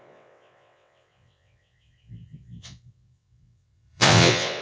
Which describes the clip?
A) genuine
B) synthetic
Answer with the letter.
B